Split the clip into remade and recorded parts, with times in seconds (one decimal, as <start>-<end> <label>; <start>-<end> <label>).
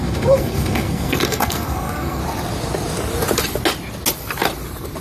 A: 0.0-2.2 remade; 2.2-5.0 recorded